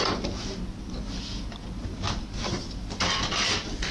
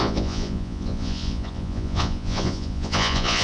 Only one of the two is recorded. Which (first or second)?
first